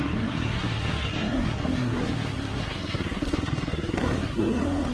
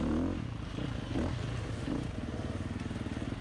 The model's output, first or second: first